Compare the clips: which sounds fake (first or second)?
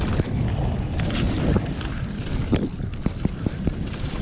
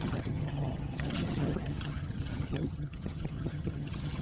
second